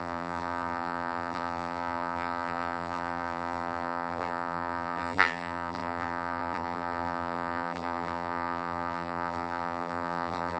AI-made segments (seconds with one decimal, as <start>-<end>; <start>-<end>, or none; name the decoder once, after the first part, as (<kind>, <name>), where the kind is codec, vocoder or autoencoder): 0.0-10.6 (vocoder, BigVGAN v2)